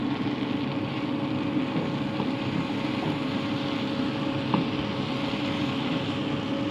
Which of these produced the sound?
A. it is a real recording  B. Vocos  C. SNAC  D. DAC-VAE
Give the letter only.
A